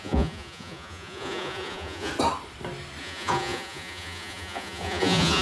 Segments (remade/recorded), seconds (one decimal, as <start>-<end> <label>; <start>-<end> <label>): 0.0-2.1 remade; 2.1-3.0 recorded; 3.0-5.4 remade